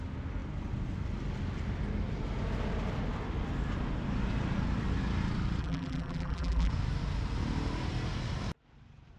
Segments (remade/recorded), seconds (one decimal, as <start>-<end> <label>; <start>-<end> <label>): 0.0-5.6 recorded; 5.6-6.7 remade; 6.7-9.2 recorded